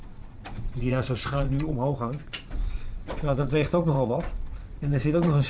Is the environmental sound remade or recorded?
remade